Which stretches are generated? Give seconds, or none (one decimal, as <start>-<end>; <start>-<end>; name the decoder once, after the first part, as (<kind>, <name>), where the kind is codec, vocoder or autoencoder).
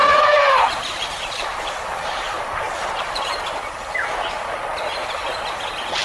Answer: 0.0-3.4 (vocoder, BigVGAN v2)